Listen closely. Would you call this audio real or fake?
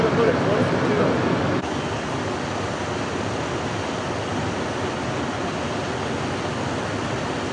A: real